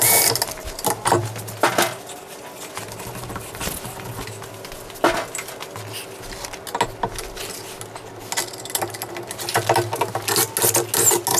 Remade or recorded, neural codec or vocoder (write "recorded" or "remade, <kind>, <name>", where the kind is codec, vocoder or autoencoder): recorded